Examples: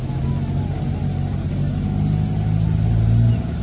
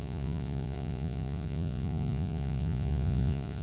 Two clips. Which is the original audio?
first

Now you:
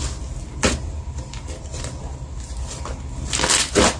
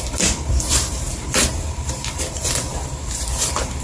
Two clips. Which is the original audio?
first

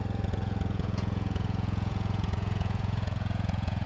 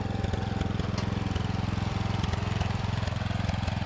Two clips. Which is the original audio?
second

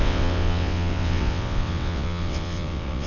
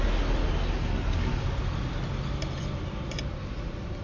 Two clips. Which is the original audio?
second